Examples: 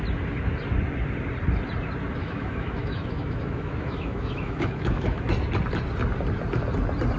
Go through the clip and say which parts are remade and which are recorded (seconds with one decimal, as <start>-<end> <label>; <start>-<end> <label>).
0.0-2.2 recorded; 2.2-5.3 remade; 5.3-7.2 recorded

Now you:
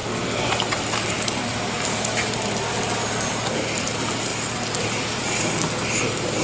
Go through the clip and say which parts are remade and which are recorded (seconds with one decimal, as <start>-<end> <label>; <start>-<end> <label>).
0.0-6.4 recorded

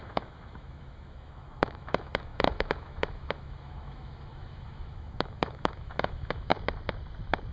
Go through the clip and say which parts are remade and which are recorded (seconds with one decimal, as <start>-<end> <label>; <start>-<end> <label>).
0.0-6.5 remade; 6.5-7.5 recorded

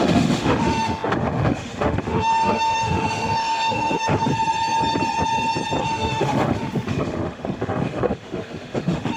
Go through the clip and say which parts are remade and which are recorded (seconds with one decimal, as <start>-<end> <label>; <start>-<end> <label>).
0.0-4.3 remade; 4.3-5.8 recorded; 5.8-9.2 remade